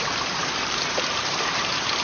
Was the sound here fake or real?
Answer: fake